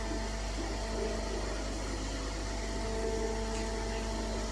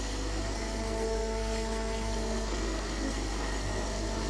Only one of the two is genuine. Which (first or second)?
first